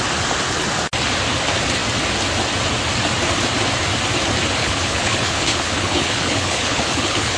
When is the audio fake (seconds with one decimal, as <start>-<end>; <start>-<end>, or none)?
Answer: 4.6-7.4